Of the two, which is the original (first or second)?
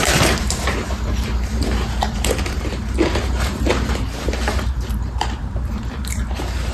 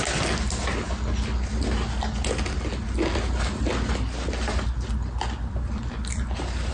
second